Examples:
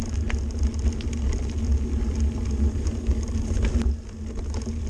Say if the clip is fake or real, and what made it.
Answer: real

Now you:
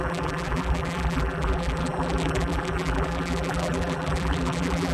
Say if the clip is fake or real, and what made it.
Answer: fake, vocoder, BigVGAN v2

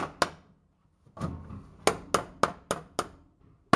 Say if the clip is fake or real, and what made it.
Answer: real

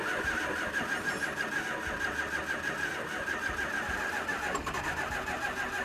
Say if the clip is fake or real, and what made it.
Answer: real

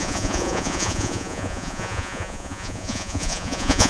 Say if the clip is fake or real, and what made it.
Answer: fake, vocoder, Vocos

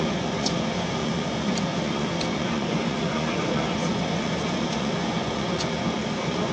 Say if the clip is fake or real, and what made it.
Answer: fake, vocoder, Vocos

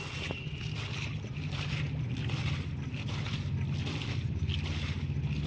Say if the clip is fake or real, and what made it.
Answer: real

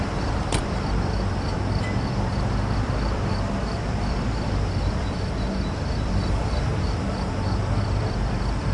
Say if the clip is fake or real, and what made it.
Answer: fake, vocoder, BigVGAN v2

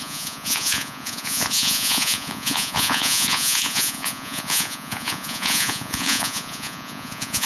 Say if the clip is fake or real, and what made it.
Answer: fake, vocoder, Vocos